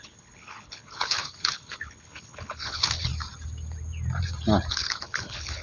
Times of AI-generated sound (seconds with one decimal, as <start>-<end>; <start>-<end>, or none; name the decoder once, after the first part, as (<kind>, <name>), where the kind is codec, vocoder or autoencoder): 0.0-3.1 (codec, HILCodec); 4.7-5.6